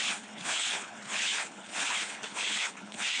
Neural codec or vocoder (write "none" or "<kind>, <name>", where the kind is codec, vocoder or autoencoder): codec, HILCodec